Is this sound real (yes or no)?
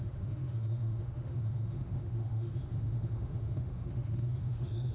no